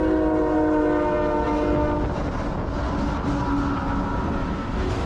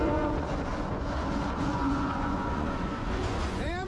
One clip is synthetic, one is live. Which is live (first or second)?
first